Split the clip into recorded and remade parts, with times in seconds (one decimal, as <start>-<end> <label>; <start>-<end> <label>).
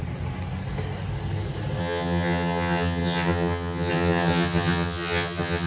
0.0-1.8 recorded; 1.8-5.7 remade